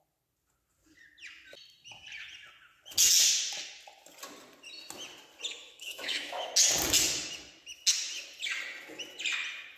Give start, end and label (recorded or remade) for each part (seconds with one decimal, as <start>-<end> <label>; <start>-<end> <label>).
0.0-5.6 recorded; 5.6-6.5 remade; 6.5-9.8 recorded